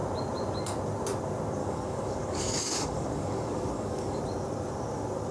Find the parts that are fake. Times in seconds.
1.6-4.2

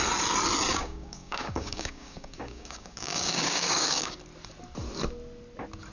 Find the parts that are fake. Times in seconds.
0.7-4.2